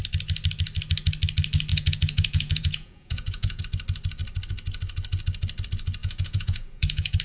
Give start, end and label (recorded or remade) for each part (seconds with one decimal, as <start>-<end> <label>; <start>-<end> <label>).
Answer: 0.0-1.7 recorded; 1.7-3.6 remade; 3.6-6.0 recorded; 6.0-7.2 remade